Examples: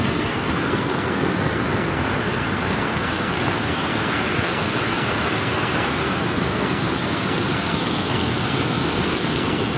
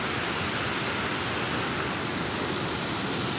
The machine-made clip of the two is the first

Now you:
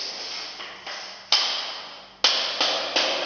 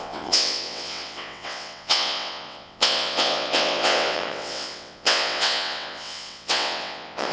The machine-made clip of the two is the second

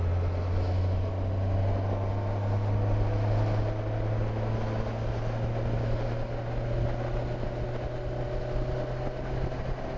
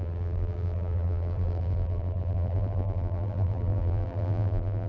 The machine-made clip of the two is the second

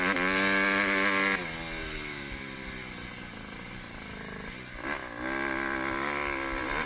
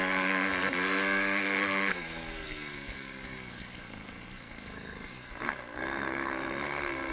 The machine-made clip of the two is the second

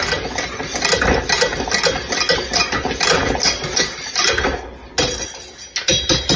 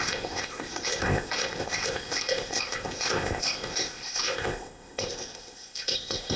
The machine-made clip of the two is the second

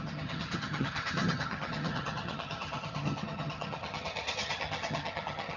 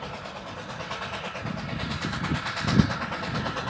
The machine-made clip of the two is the first